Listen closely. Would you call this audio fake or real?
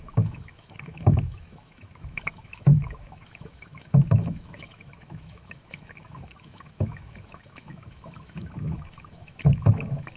fake